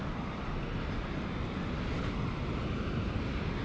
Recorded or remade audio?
recorded